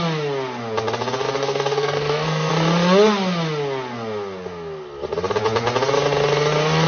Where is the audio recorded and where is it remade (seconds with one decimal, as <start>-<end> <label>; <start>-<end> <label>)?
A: 0.0-1.4 recorded; 1.4-2.5 remade; 2.5-6.9 recorded